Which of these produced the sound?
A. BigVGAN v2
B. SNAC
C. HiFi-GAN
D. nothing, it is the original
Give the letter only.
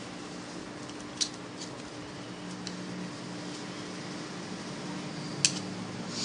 D